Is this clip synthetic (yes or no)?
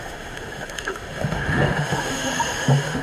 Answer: yes